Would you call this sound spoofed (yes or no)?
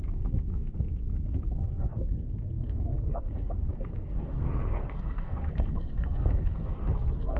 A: yes